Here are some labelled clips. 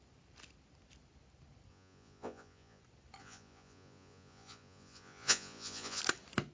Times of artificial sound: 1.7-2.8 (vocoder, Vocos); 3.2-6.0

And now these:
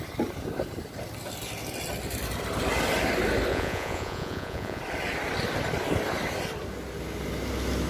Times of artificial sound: 3.5-4.8 (vocoder, Vocos)